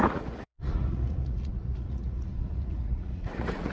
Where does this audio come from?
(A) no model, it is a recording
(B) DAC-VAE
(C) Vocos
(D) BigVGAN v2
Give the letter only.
C